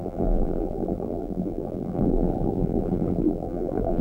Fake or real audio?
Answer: fake